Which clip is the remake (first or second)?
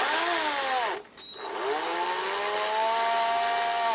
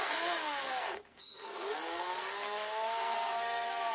second